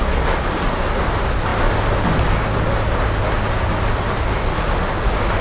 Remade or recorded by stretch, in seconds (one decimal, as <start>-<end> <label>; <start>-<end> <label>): 0.0-5.4 recorded